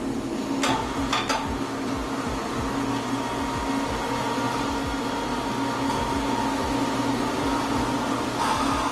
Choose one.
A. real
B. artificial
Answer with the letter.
A